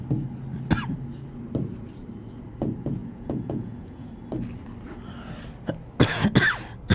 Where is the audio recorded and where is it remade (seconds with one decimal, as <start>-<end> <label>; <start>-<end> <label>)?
0.0-3.0 recorded; 3.0-4.1 remade; 4.1-6.9 recorded